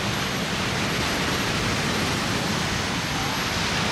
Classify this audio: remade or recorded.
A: recorded